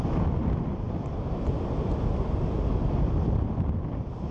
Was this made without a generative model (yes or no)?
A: yes